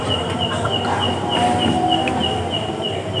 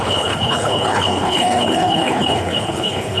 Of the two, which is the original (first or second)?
first